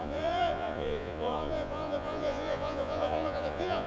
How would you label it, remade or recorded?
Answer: remade